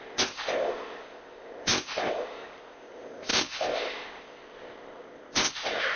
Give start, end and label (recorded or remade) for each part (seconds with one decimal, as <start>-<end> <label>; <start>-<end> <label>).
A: 0.0-6.0 remade

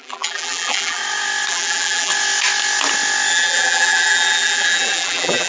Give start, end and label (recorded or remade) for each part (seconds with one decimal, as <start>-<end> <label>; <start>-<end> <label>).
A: 0.0-1.0 remade; 1.0-1.5 recorded; 1.5-2.1 remade; 2.1-3.3 recorded; 3.3-5.5 remade

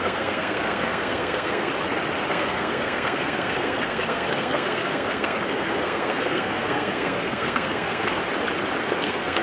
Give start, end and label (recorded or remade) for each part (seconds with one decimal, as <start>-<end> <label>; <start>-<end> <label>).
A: 0.0-1.7 remade; 1.7-2.3 recorded; 2.3-8.2 remade; 8.2-8.8 recorded; 8.8-9.4 remade

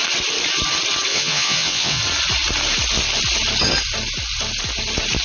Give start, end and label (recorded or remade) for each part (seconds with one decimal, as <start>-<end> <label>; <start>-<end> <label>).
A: 0.0-1.1 recorded; 1.1-2.0 remade; 2.0-5.2 recorded

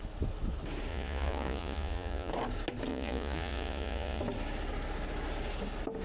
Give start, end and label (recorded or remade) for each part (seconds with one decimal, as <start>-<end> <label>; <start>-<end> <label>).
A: 0.0-0.9 recorded; 0.9-2.3 remade; 2.3-2.9 recorded; 2.9-4.2 remade; 4.2-6.0 recorded

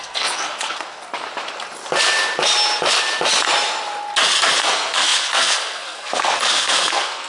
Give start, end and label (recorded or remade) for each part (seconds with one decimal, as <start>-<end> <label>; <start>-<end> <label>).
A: 0.0-1.1 remade; 1.1-4.6 recorded; 4.6-7.3 remade

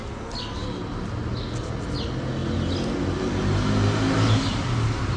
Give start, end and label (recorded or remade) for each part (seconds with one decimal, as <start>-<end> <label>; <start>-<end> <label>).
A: 0.0-5.2 recorded